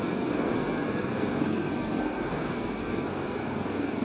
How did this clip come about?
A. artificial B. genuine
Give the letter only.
A